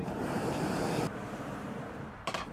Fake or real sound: fake